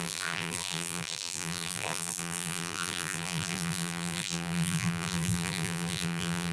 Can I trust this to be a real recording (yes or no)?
no